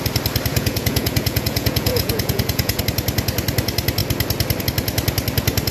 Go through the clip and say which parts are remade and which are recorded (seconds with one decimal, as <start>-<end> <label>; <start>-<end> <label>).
0.0-0.5 recorded; 0.5-2.8 remade; 2.8-5.7 recorded